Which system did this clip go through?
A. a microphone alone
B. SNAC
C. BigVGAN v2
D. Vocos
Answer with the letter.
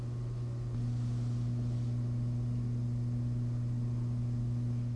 A